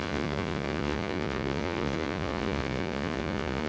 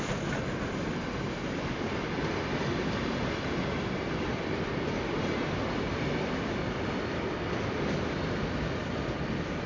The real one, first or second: second